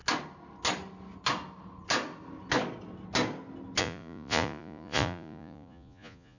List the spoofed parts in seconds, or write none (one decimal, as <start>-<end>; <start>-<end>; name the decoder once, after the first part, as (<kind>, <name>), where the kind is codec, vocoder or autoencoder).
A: 3.8-6.4 (vocoder, Vocos)